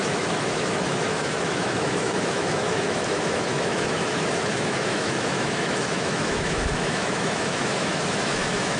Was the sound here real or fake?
fake